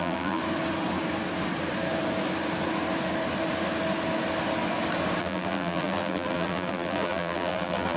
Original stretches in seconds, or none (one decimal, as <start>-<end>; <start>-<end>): 0.4-5.2